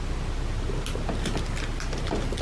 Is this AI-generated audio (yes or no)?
no